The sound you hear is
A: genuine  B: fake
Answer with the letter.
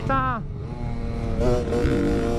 A